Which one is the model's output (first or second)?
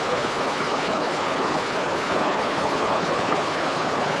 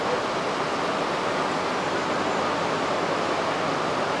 first